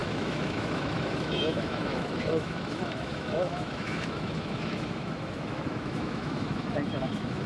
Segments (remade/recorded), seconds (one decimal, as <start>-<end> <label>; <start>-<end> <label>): 0.0-7.5 remade